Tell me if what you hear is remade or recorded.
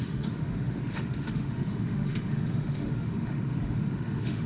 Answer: remade